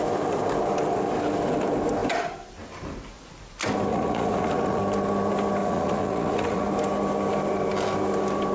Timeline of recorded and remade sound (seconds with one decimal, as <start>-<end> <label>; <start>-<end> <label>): 0.0-3.9 recorded; 3.9-4.8 remade; 4.8-5.6 recorded; 5.6-6.7 remade; 6.7-8.5 recorded